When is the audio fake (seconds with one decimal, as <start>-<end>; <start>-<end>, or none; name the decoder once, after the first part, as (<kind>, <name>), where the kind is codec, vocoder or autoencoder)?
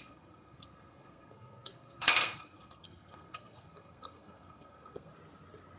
0.0-5.1 (codec, SNAC)